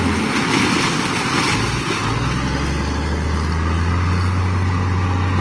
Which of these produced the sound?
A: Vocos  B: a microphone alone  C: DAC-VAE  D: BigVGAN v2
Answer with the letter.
B